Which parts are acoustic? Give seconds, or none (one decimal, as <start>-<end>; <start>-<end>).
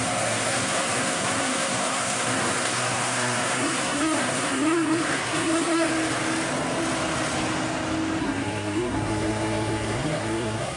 5.9-8.2